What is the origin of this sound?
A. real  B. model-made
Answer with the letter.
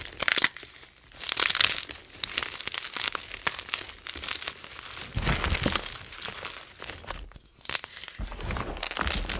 A